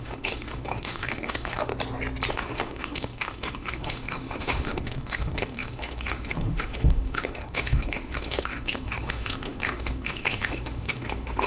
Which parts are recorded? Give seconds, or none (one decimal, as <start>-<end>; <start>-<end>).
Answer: 1.7-2.3